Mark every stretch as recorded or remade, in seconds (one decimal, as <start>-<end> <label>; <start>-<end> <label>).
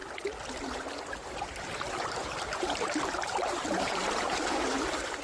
0.0-1.6 recorded; 1.6-5.2 remade